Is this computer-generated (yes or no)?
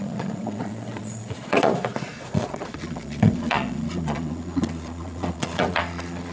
yes